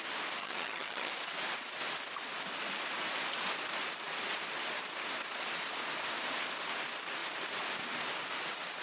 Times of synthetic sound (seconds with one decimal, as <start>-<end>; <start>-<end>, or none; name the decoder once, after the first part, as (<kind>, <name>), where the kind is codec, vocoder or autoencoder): 0.4-1.1 (vocoder, HiFi-GAN)